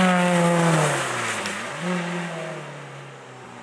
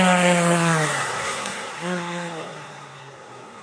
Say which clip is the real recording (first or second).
first